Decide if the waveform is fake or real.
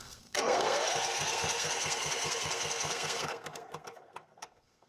fake